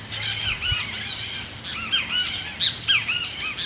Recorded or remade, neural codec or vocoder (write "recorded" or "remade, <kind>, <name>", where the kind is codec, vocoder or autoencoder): recorded